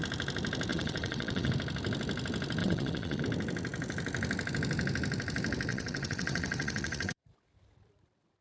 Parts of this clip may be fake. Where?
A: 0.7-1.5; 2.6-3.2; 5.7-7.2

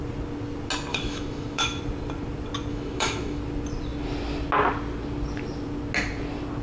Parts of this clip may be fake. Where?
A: 0.9-1.8; 2.7-3.4

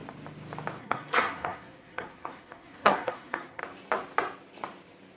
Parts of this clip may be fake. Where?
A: 0.8-3.6

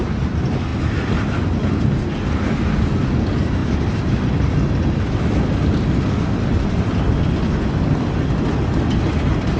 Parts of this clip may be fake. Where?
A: none

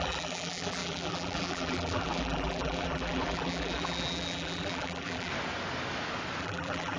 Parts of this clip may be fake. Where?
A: 0.0-5.3; 6.4-7.0